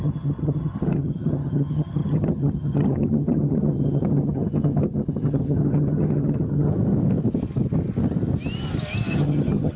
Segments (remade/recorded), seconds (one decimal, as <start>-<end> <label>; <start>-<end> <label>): 0.0-6.7 remade; 6.7-9.1 recorded; 9.1-9.8 remade

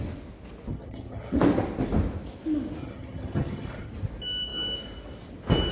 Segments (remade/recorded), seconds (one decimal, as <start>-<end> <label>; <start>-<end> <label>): 0.0-0.7 recorded; 0.7-1.4 remade; 1.4-2.8 recorded; 2.8-3.9 remade; 3.9-5.7 recorded

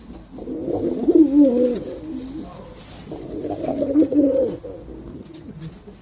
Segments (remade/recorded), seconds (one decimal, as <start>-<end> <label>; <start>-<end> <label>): 0.0-3.7 recorded; 3.7-4.5 remade; 4.5-5.1 recorded; 5.1-5.6 remade; 5.6-6.0 recorded

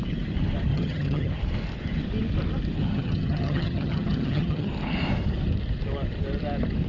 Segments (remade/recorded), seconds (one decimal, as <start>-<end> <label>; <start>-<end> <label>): 0.0-0.7 recorded; 0.7-1.3 remade; 1.3-2.8 recorded; 2.8-4.7 remade; 4.7-6.9 recorded

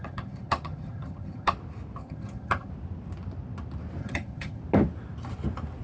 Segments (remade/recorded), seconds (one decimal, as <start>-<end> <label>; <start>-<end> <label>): 0.0-1.5 remade; 1.5-2.0 recorded; 2.0-2.7 remade; 2.7-4.0 recorded; 4.0-4.6 remade; 4.6-5.8 recorded

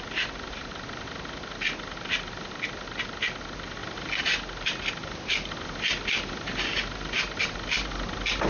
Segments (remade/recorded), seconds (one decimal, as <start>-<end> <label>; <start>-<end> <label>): 0.0-8.5 recorded

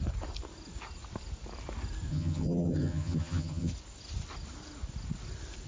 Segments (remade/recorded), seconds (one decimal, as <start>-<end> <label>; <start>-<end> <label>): 0.0-2.1 recorded; 2.1-3.7 remade; 3.7-5.7 recorded